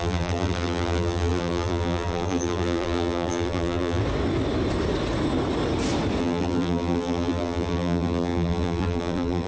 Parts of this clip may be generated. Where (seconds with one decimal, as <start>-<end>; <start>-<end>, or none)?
0.0-4.0; 6.2-9.5